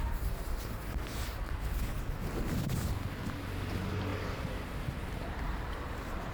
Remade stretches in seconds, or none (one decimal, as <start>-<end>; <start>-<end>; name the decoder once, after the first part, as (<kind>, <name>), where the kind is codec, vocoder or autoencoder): 4.1-6.3 (vocoder, BigVGAN v2)